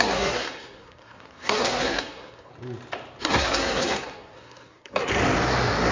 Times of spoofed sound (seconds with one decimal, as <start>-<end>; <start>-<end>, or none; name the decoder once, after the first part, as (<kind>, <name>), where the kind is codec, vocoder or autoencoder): 0.0-2.5 (codec, SNAC); 3.2-5.1